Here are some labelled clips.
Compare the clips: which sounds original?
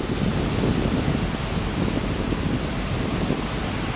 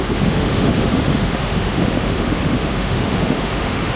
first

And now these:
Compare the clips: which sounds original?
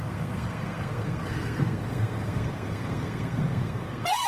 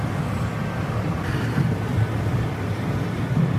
second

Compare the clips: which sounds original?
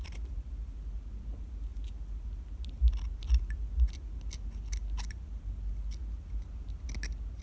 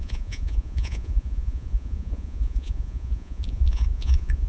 first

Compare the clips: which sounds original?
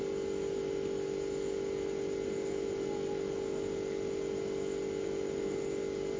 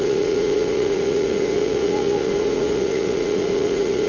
first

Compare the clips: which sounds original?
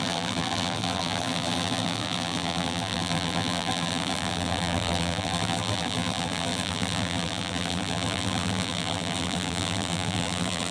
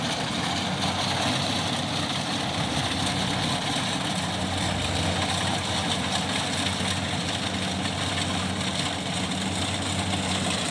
second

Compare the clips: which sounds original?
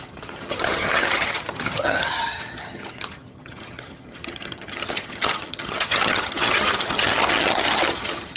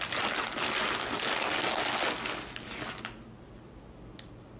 second